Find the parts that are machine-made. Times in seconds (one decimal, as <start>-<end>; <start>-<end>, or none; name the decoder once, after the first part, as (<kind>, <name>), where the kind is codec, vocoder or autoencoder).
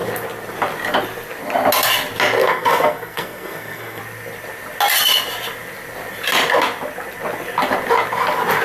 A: 2.4-4.0 (codec, SNAC)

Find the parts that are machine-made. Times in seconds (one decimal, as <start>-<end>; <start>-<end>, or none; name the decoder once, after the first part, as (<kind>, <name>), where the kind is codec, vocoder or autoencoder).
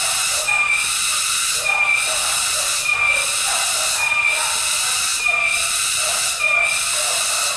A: none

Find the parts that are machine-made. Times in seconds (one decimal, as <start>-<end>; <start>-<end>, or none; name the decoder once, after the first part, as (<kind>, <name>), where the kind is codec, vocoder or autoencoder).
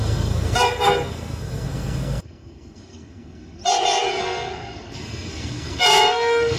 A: 0.0-3.6 (codec, SNAC); 4.2-6.6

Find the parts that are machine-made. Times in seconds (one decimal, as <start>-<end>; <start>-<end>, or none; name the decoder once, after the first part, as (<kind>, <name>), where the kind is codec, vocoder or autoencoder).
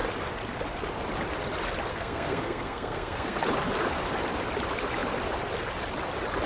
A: 1.9-3.4 (codec, SNAC)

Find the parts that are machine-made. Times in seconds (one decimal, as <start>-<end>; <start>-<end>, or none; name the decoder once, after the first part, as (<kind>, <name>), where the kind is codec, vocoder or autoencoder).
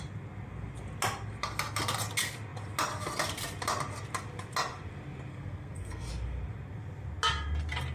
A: 5.3-6.1 (codec, SNAC)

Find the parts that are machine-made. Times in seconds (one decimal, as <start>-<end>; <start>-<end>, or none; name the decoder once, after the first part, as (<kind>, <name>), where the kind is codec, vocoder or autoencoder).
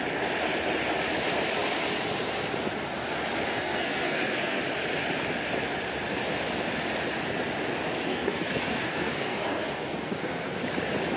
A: 3.5-4.6 (codec, SNAC); 8.1-10.5